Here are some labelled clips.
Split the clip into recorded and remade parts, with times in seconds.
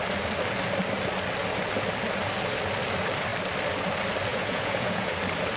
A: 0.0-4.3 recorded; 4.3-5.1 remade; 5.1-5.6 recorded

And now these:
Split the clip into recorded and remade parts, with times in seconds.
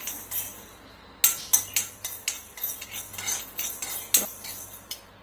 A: 0.0-0.5 remade; 0.5-4.3 recorded; 4.3-5.2 remade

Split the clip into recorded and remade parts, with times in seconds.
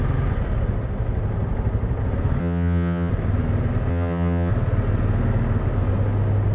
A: 0.0-2.4 recorded; 2.4-3.1 remade; 3.1-3.9 recorded; 3.9-4.5 remade; 4.5-6.5 recorded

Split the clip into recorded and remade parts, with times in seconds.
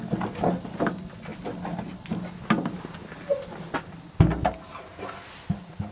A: 0.0-5.9 recorded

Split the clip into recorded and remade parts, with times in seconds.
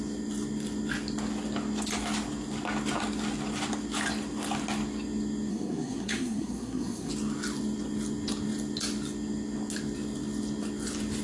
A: 0.0-5.5 recorded; 5.5-7.1 remade; 7.1-11.2 recorded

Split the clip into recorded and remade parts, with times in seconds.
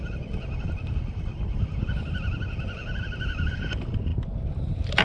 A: 0.0-1.3 recorded; 1.3-3.0 remade; 3.0-5.0 recorded